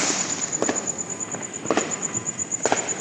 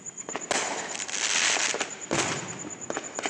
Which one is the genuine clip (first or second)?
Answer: second